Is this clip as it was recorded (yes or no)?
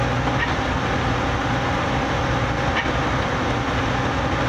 yes